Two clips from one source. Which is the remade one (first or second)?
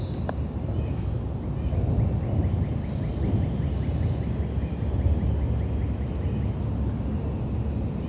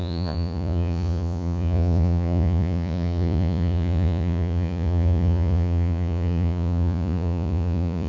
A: second